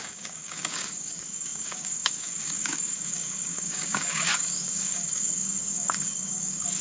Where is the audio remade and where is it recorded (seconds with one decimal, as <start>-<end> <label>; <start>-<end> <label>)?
0.0-6.8 remade